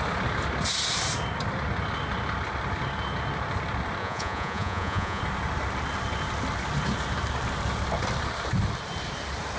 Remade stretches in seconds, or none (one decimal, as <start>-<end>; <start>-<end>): 4.0-5.2